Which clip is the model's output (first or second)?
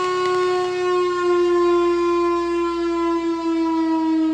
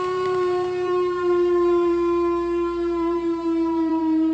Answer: second